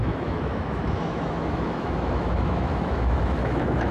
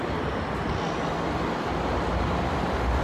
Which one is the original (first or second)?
second